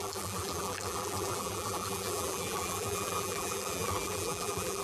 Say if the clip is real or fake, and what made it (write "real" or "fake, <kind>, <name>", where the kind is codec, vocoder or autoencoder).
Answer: fake, vocoder, BigVGAN v2